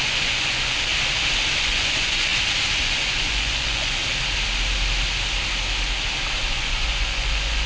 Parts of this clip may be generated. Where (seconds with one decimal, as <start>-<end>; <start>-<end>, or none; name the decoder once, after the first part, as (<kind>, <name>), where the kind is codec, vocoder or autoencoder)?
0.0-0.9 (vocoder, Vocos); 1.6-2.3; 2.8-4.0; 6.5-7.7